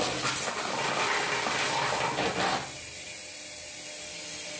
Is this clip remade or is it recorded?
recorded